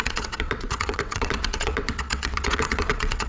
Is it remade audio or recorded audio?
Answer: remade